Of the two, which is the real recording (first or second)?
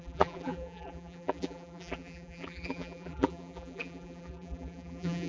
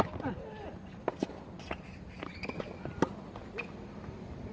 second